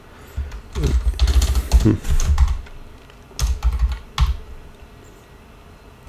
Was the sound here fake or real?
real